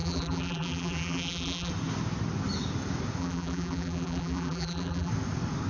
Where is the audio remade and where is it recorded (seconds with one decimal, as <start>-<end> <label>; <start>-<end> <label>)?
0.0-1.7 remade; 1.7-3.2 recorded; 3.2-5.1 remade; 5.1-5.7 recorded

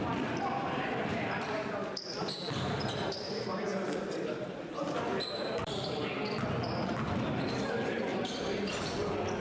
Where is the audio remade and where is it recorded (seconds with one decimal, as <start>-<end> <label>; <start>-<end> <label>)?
0.0-1.1 recorded; 1.1-4.6 remade; 4.6-5.1 recorded; 5.1-6.1 remade; 6.1-8.1 recorded; 8.1-8.7 remade; 8.7-9.4 recorded